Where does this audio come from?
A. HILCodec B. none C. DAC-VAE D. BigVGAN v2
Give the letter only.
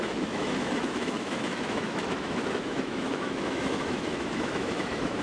C